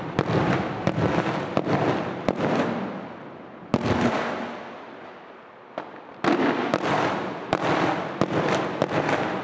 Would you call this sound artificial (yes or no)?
no